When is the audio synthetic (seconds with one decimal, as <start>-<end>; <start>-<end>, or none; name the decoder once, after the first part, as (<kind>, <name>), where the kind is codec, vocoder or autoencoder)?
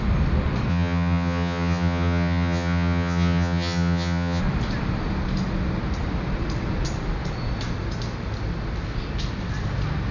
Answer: 0.7-4.4 (vocoder, HiFi-GAN)